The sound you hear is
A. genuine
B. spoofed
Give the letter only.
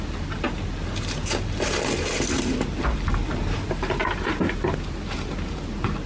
A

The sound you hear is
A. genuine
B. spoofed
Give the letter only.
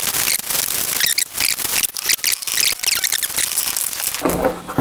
A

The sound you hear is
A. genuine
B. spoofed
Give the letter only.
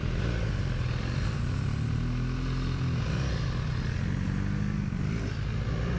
A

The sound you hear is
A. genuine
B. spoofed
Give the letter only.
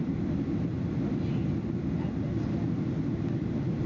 A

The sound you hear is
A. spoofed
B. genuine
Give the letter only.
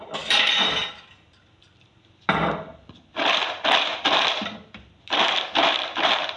A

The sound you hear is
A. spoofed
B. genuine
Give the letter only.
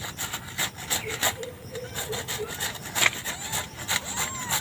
B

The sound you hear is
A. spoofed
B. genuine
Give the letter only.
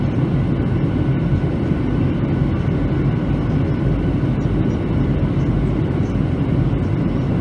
B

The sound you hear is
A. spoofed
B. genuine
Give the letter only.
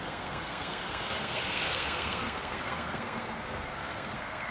A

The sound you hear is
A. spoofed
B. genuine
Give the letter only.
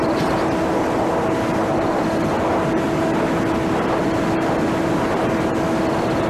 B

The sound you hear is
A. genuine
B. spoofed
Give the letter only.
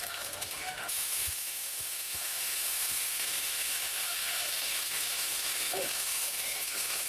B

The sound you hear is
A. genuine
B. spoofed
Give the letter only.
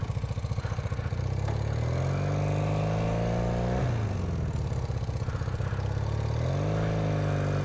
A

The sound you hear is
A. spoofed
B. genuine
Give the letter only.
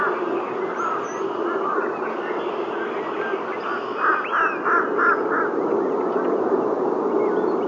B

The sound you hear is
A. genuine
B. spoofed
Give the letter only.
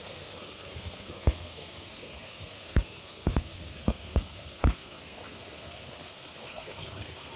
B